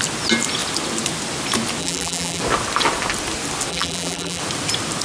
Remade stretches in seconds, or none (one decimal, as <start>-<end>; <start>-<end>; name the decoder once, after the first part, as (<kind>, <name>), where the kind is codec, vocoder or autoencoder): 1.8-2.4 (vocoder, BigVGAN v2); 3.7-4.4